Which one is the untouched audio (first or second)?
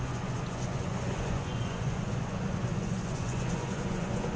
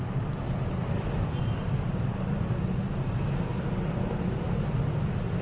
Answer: second